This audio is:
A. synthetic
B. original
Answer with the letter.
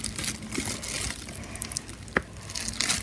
B